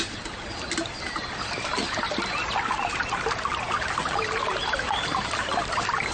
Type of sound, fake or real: real